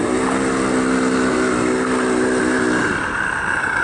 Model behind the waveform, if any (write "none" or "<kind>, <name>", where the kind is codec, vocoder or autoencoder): none